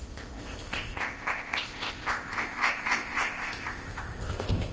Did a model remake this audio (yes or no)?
yes